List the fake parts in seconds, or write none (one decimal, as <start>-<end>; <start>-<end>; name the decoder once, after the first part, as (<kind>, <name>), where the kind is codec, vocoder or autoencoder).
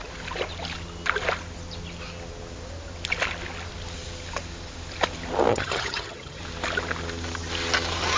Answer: 5.5-6.4 (vocoder, HiFi-GAN)